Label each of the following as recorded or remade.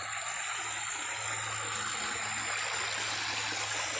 recorded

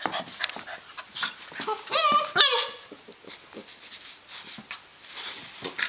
recorded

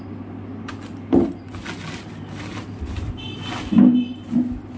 recorded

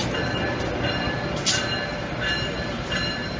recorded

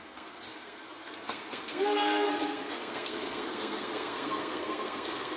remade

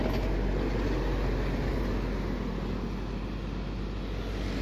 recorded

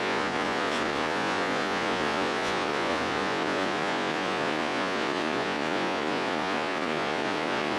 remade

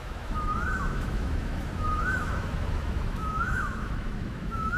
remade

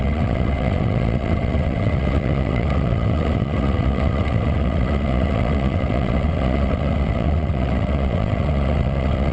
remade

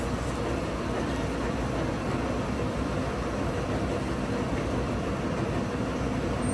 recorded